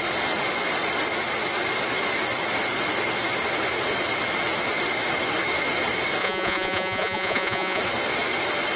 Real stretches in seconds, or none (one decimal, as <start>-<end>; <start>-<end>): 0.0-6.2; 7.8-8.8